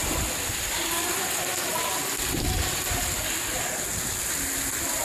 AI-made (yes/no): no